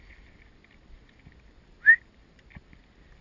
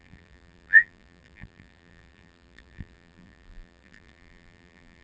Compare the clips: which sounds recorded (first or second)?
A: first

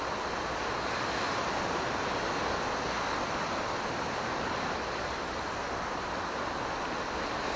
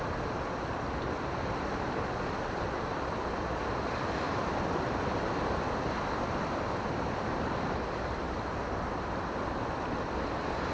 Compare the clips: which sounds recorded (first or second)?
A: first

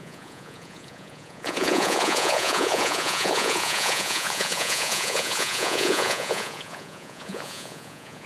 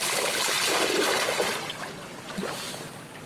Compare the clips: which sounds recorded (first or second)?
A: second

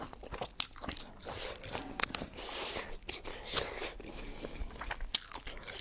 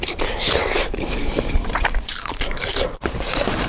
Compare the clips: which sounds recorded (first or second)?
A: first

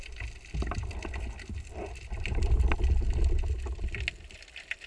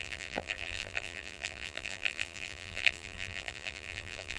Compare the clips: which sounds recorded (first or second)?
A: first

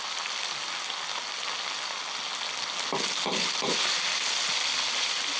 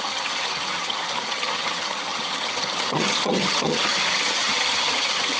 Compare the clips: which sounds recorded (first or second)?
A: first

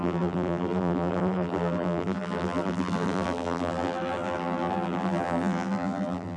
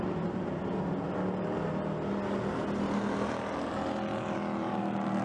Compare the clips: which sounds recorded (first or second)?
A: second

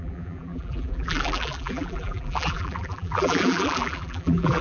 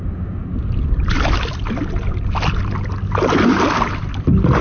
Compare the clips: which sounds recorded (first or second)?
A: second